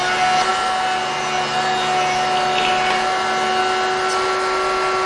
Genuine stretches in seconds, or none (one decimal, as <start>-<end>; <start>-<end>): 0.0-5.1